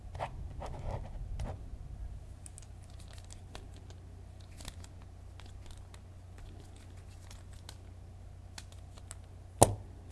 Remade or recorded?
recorded